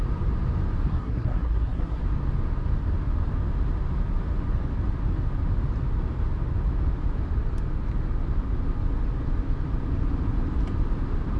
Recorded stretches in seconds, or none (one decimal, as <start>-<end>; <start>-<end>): 0.0-0.9; 2.0-11.4